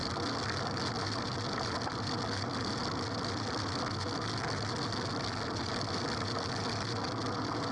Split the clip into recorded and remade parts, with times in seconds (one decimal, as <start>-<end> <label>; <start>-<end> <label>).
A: 0.0-7.7 recorded